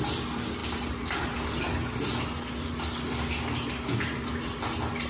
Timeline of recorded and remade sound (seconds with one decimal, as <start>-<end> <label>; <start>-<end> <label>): 0.0-5.1 recorded